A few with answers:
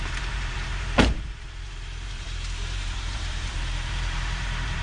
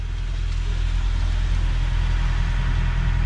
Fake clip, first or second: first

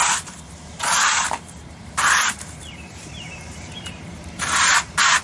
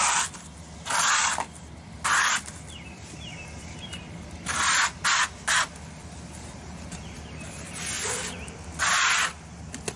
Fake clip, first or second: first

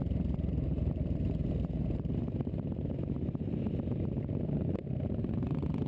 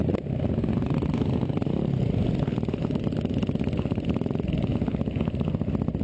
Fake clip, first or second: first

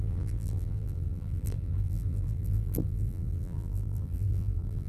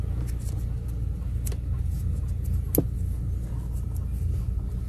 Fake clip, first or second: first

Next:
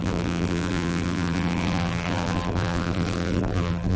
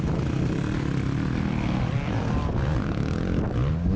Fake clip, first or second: first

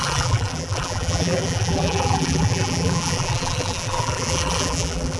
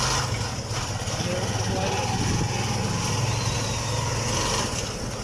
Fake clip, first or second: first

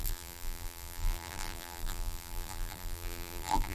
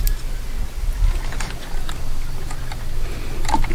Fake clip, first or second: first